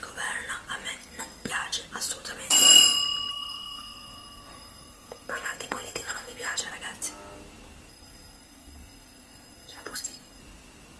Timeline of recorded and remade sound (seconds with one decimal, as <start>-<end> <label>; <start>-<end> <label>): 0.0-1.0 recorded; 1.0-1.5 remade; 1.5-3.3 recorded; 3.3-6.6 remade; 6.6-7.9 recorded; 7.9-10.4 remade; 10.4-11.0 recorded